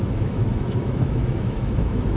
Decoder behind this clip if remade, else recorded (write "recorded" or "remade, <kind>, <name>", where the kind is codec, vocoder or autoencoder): remade, autoencoder, DAC-VAE